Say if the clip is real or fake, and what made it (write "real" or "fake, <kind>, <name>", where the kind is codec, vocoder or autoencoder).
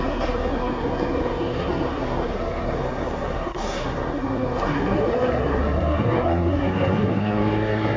fake, codec, SNAC